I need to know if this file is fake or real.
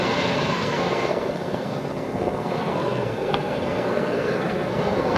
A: fake